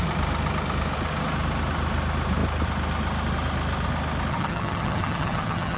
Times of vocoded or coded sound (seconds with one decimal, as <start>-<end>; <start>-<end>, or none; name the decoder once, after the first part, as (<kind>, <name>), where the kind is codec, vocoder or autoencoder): 4.3-5.8 (vocoder, HiFi-GAN)